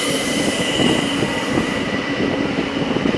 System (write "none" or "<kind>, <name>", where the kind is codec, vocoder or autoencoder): none